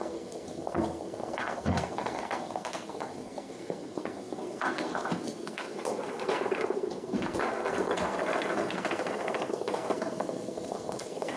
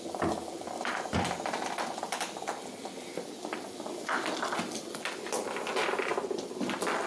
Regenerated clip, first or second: first